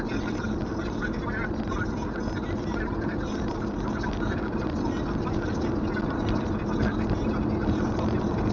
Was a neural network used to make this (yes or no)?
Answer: no